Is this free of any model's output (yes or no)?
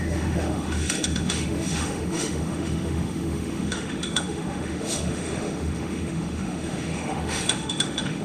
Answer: no